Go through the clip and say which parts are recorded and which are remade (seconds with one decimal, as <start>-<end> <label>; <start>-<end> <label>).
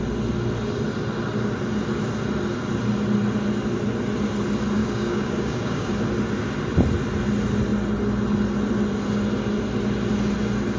0.0-4.8 recorded; 4.8-5.9 remade; 5.9-10.8 recorded